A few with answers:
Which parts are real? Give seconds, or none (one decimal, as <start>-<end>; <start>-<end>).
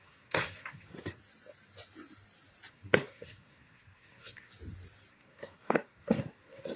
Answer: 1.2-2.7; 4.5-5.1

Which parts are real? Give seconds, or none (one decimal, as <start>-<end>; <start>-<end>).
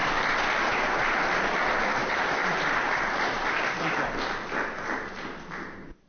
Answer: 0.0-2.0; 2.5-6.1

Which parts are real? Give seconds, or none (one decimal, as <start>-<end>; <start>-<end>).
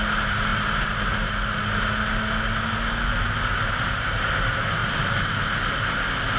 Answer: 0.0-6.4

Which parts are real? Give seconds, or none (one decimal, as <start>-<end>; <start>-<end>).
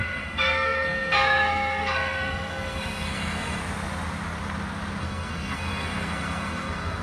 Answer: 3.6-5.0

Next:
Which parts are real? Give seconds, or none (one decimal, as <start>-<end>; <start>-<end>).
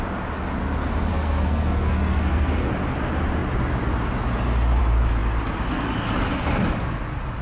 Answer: 0.0-1.1; 2.7-7.4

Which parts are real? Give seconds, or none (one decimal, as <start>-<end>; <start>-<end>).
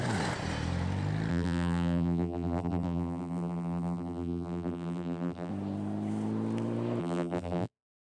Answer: 0.0-1.3; 5.5-7.0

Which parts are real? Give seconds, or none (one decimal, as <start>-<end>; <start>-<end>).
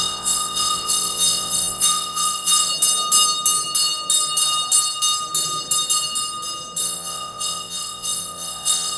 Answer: 2.7-6.8